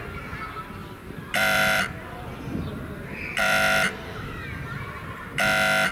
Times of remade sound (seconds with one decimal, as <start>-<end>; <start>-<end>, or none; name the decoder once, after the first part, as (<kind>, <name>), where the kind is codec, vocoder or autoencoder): 0.8-4.3 (vocoder, BigVGAN v2)